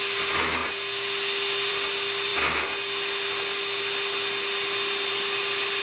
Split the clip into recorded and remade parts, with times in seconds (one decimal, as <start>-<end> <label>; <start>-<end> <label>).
0.0-5.8 recorded

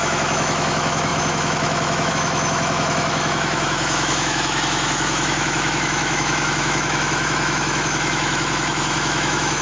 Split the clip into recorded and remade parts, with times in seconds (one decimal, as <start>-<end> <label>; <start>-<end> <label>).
0.0-9.6 remade

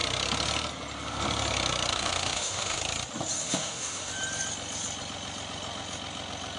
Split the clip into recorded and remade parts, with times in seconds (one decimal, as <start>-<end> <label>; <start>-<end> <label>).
0.0-1.9 recorded; 1.9-2.8 remade; 2.8-3.4 recorded; 3.4-4.1 remade; 4.1-6.6 recorded